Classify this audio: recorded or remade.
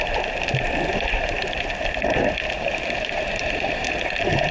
recorded